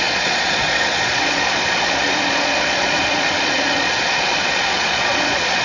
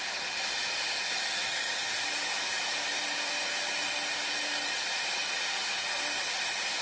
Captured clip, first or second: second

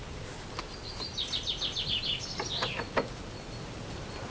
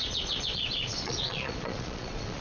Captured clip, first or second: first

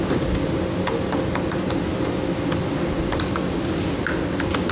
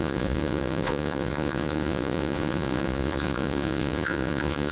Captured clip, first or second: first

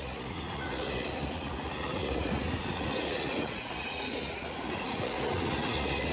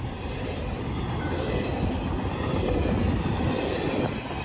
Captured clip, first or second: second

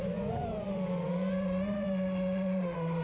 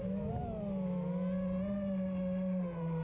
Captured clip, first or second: second